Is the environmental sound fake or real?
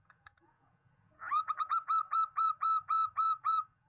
fake